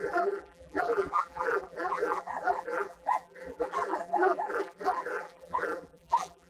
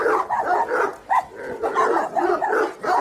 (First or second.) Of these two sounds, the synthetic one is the first